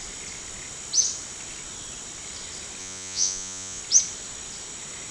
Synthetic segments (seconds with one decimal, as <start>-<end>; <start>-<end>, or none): 2.8-3.8